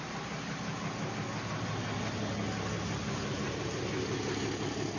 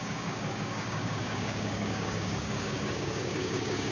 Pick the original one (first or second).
first